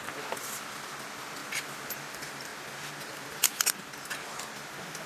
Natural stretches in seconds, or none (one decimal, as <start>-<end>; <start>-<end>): 1.4-2.1; 2.5-3.0; 3.4-4.3